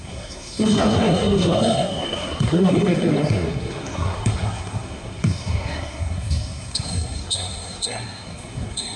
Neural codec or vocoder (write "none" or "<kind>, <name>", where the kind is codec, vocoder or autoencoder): codec, SNAC